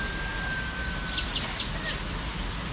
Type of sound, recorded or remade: recorded